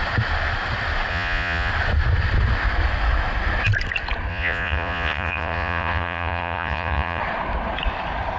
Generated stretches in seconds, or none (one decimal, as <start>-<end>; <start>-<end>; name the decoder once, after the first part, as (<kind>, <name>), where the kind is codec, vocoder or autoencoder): 1.1-1.7 (vocoder, Vocos); 4.3-7.2

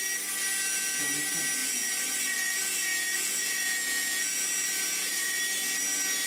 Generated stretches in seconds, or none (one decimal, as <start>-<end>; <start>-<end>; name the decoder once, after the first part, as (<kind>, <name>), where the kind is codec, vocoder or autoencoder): 1.6-5.4 (vocoder, Vocos)